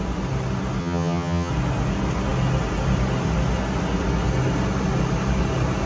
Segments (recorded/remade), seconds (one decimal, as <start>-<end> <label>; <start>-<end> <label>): 0.0-0.8 recorded; 0.8-1.5 remade; 1.5-5.9 recorded